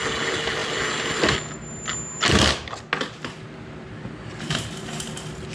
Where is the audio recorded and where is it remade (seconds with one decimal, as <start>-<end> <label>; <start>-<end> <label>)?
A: 0.0-5.5 recorded